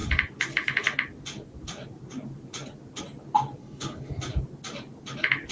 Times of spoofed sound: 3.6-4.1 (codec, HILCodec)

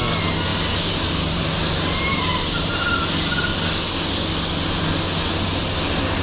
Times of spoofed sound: 0.5-2.7 (vocoder, BigVGAN v2)